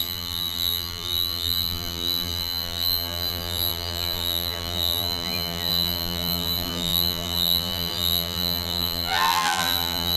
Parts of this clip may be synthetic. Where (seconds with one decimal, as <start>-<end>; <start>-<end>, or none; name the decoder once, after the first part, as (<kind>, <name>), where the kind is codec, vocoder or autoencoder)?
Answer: 0.0-10.2 (vocoder, BigVGAN v2)